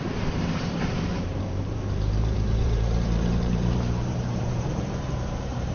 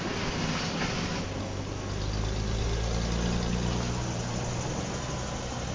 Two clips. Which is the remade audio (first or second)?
first